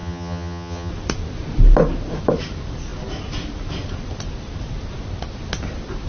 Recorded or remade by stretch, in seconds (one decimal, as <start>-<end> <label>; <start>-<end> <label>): 0.0-0.9 remade; 0.9-6.1 recorded